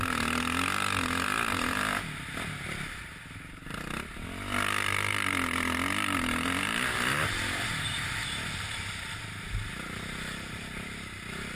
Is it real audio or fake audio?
real